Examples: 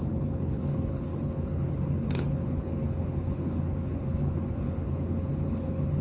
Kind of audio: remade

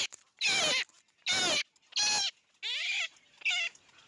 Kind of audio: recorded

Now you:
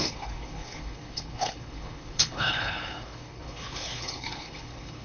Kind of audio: remade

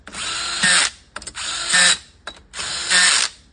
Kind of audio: recorded